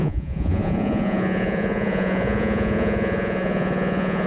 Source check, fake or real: fake